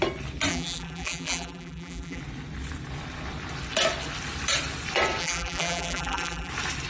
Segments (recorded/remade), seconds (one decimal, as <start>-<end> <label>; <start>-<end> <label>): 0.0-0.5 recorded; 0.5-2.2 remade; 2.2-5.2 recorded; 5.2-6.5 remade; 6.5-6.9 recorded